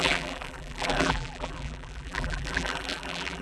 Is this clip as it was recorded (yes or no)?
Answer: no